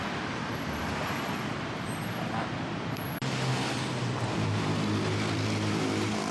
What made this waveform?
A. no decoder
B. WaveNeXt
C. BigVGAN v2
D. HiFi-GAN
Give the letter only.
C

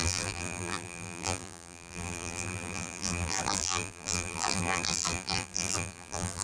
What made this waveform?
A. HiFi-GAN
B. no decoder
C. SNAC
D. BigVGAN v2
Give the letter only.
D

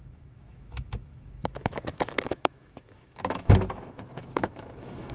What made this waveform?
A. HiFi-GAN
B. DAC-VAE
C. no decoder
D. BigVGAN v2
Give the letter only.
B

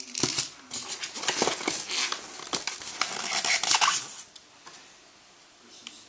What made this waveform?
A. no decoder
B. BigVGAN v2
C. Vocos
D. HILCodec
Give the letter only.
A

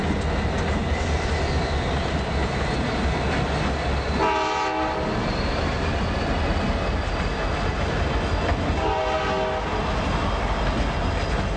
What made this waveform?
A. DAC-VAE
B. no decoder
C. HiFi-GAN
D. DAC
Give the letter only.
B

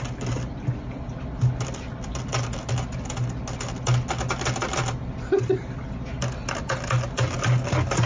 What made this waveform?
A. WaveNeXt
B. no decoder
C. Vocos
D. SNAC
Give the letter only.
B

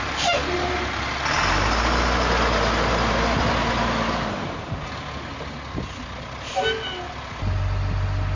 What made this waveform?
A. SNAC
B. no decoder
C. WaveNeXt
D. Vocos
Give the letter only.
B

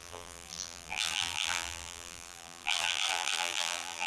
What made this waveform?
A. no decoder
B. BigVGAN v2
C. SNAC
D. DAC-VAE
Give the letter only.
B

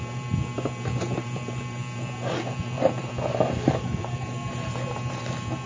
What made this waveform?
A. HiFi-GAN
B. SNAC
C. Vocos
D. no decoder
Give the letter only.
D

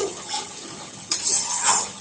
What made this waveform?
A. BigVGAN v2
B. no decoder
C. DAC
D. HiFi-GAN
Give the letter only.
D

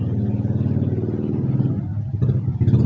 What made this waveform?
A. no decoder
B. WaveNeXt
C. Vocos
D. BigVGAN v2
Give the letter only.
A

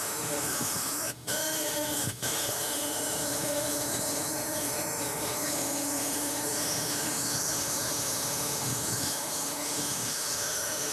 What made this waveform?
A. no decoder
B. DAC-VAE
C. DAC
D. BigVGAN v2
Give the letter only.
B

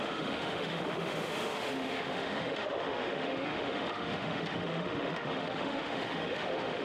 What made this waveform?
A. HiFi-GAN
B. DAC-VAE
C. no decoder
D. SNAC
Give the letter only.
B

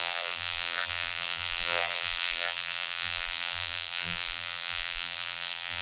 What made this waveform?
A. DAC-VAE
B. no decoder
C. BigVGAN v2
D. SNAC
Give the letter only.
C